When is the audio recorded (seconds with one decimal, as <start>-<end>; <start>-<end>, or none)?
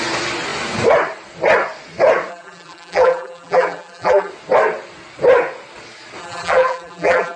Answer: 0.0-2.3; 4.3-6.2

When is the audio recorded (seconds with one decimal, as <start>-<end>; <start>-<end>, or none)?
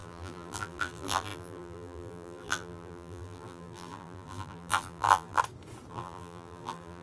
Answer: 5.4-5.9